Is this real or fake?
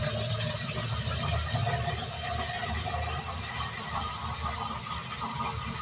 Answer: fake